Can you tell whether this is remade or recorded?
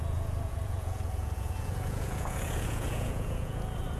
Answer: remade